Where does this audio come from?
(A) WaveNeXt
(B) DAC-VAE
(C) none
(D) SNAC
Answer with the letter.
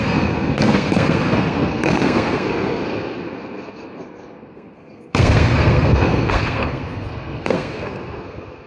D